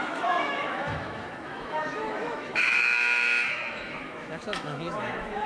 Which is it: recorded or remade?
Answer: remade